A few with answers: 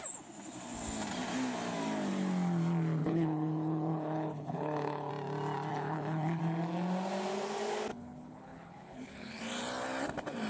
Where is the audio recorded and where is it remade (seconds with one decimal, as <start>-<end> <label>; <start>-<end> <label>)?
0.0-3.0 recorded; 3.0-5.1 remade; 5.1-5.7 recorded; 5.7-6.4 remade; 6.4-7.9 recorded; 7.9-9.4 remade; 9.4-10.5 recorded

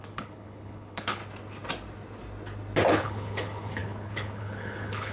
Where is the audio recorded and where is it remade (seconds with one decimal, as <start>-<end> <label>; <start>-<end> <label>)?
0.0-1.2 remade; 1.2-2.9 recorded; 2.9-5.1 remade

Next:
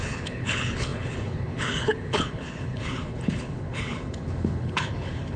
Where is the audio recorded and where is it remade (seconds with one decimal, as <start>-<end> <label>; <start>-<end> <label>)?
0.0-5.4 remade

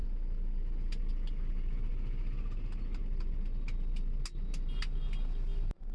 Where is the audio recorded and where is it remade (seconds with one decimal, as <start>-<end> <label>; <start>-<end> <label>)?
0.0-5.9 recorded

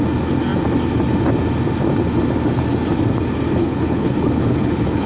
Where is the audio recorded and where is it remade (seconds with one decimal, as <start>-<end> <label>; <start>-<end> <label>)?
0.0-3.6 recorded; 3.6-5.1 remade